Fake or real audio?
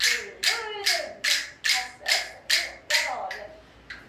real